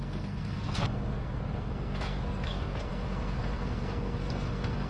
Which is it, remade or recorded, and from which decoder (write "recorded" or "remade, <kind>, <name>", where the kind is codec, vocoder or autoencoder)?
remade, codec, SNAC